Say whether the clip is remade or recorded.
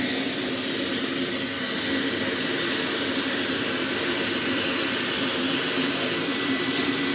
recorded